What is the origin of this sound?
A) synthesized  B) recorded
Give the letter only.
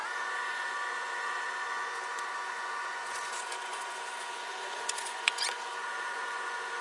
A